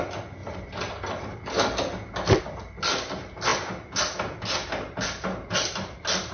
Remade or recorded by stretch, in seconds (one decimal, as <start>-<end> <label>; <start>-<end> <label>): 0.0-6.3 recorded